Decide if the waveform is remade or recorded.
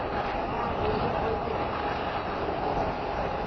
recorded